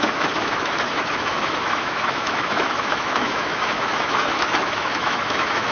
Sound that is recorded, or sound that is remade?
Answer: remade